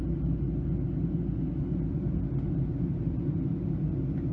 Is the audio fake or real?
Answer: real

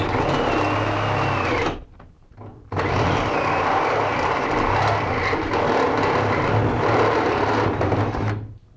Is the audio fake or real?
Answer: real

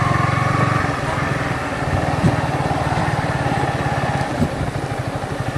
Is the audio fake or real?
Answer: real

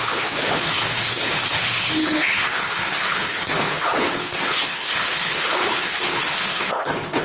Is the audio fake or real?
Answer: fake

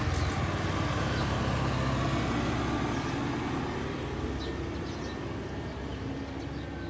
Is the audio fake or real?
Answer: real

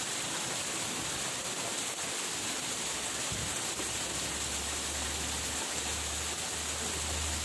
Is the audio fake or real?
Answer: real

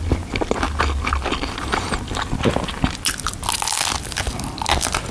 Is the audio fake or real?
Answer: real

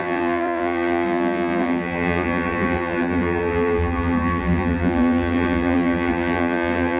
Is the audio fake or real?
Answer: fake